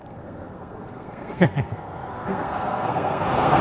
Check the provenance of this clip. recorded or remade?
remade